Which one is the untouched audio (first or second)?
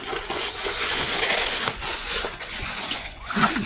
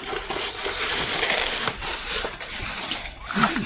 second